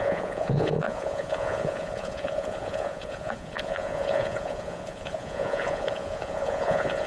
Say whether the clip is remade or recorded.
remade